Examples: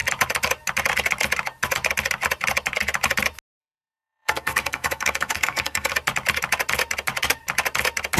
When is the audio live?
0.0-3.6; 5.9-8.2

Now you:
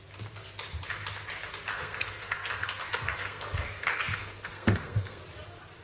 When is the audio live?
0.0-1.7; 5.2-5.8

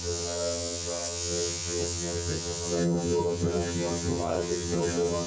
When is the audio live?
none

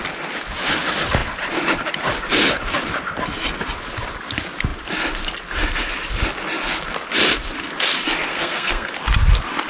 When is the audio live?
0.0-8.3; 8.9-9.7

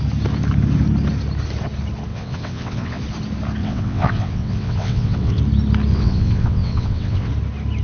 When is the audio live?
0.0-2.1; 3.0-3.6; 5.4-5.9; 7.3-7.8

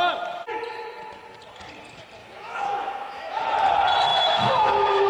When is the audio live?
0.0-2.2; 3.4-4.1